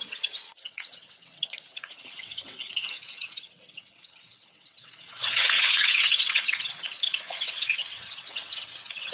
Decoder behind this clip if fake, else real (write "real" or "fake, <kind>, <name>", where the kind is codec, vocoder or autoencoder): fake, vocoder, WaveNeXt